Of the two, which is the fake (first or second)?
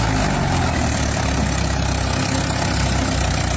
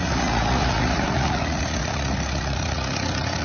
second